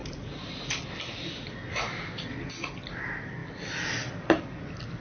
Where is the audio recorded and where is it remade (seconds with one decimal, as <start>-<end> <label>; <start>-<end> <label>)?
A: 0.0-0.6 remade; 0.6-5.0 recorded